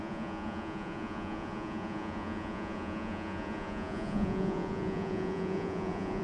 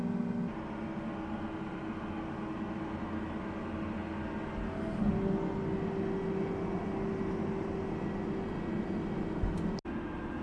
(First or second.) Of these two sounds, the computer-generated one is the first